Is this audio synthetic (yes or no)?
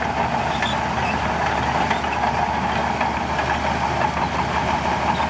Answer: no